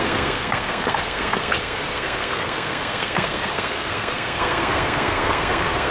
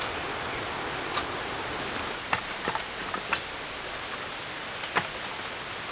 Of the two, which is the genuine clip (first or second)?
second